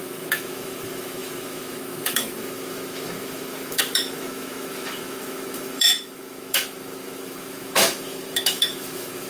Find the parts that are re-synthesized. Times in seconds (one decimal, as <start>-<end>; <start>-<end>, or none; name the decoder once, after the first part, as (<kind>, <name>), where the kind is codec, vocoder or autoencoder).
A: 0.0-9.3 (autoencoder, DAC-VAE)